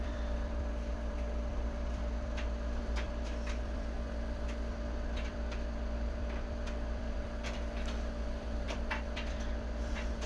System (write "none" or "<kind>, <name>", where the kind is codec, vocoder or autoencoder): vocoder, BigVGAN v2